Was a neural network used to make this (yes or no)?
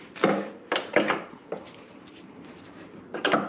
yes